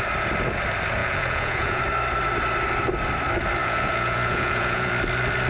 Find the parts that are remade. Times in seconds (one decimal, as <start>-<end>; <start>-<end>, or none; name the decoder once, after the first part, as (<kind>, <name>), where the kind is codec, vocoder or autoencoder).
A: 1.0-1.8 (vocoder, Vocos); 3.6-4.9